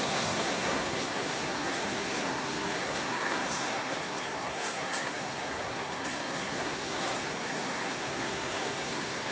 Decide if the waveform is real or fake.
fake